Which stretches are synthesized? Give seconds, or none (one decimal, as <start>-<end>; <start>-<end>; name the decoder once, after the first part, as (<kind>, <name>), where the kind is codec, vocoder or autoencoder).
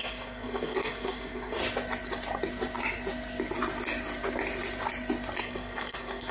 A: 0.0-1.6 (codec, SNAC); 5.4-6.3